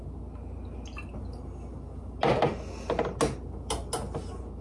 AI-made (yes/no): no